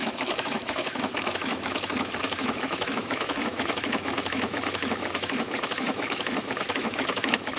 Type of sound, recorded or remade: remade